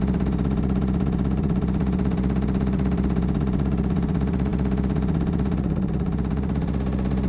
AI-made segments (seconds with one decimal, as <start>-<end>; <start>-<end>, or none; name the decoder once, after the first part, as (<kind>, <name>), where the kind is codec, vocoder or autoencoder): 0.0-7.3 (vocoder, Vocos)